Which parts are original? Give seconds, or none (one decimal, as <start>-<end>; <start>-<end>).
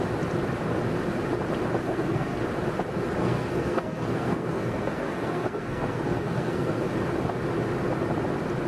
0.0-1.8; 2.4-3.2; 6.8-8.7